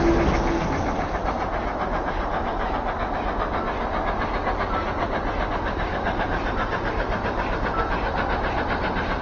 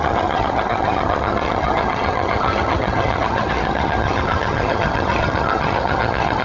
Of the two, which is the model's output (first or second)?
second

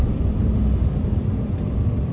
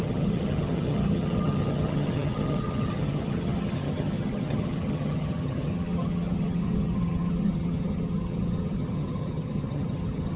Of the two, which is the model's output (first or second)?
second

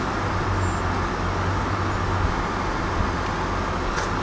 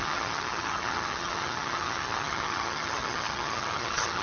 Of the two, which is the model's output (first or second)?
second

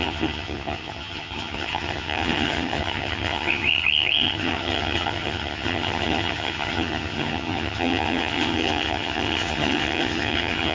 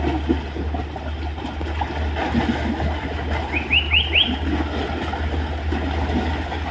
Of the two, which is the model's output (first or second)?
first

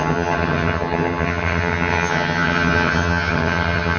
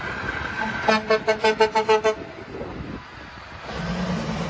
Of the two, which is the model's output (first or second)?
first